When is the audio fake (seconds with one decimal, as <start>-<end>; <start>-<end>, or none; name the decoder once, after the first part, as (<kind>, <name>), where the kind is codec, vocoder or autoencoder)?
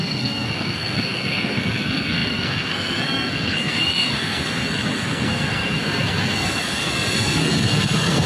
0.0-8.3 (codec, SNAC)